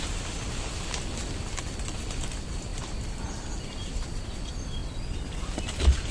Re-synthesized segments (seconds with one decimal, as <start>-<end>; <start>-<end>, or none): none